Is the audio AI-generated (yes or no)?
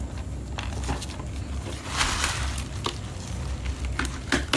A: no